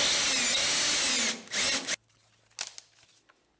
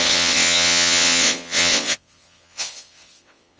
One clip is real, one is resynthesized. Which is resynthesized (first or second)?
second